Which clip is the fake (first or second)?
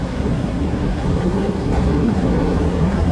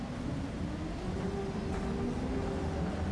first